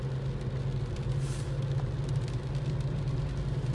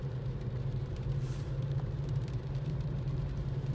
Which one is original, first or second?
first